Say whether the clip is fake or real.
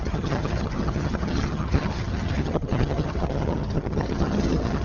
fake